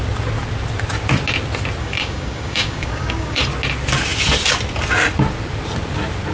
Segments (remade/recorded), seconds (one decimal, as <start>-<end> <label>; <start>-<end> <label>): 0.0-1.8 recorded; 1.8-3.5 remade; 3.5-6.3 recorded